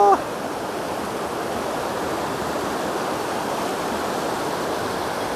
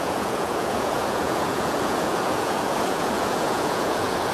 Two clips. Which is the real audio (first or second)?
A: first